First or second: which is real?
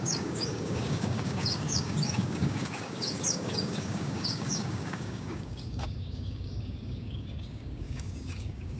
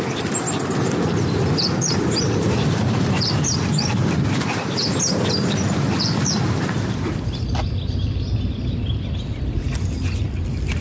second